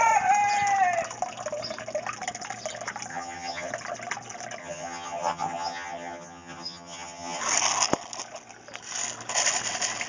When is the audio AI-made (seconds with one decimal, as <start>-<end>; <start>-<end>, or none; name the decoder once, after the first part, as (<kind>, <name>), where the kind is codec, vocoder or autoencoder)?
3.1-3.7 (vocoder, HiFi-GAN); 4.6-7.4